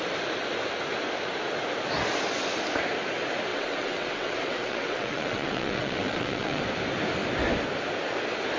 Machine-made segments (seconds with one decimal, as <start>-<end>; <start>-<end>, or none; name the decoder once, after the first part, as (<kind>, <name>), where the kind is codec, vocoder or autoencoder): 3.5-6.6 (vocoder, WaveNeXt)